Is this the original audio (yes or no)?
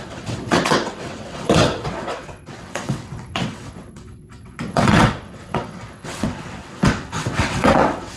no